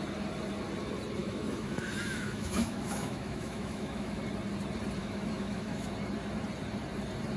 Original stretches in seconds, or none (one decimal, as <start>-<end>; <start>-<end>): 0.0-1.2; 4.2-5.0; 5.9-7.4